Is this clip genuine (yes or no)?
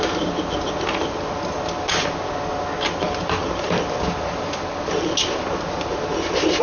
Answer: yes